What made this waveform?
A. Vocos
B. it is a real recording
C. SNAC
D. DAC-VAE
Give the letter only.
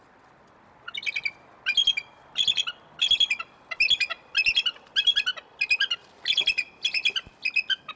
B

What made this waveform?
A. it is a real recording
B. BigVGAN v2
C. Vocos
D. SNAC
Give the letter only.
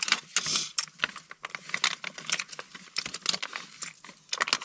A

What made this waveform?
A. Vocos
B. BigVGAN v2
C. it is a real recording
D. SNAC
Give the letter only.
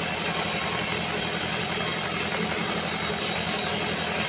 C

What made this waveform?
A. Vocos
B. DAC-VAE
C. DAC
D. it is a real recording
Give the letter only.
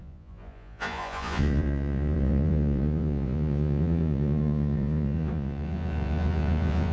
A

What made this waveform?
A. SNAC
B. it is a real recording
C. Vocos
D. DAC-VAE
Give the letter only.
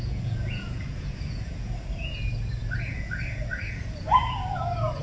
C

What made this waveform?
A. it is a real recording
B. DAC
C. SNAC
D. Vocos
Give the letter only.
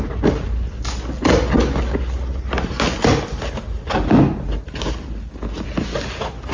A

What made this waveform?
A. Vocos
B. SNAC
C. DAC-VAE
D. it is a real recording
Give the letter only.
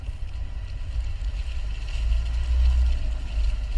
D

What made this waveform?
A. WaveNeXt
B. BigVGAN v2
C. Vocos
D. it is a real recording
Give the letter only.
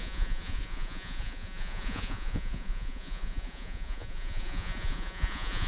C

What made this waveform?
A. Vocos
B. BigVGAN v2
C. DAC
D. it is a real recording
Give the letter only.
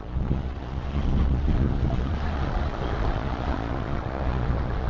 A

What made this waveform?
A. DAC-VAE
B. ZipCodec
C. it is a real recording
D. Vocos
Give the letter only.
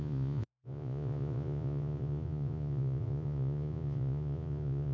D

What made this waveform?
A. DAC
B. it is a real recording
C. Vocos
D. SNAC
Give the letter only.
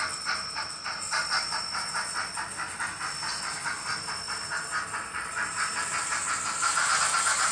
B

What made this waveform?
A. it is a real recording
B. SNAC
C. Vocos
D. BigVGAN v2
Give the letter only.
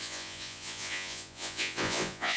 C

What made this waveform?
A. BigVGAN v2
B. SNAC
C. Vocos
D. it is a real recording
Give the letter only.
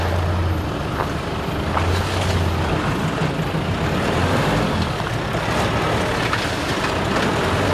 D